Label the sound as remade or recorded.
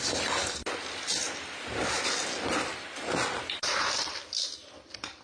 recorded